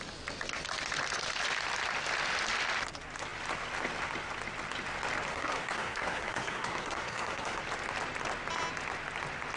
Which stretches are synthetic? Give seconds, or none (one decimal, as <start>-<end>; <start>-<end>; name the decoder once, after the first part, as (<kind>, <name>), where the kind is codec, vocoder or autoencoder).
5.3-7.6 (codec, SNAC)